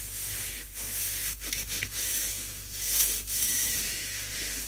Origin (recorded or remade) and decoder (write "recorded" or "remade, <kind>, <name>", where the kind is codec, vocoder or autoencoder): remade, autoencoder, DAC-VAE